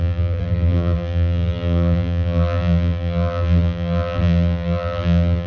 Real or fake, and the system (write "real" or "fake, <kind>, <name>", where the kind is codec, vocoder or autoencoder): fake, vocoder, BigVGAN v2